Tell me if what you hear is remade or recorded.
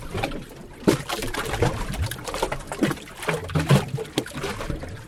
recorded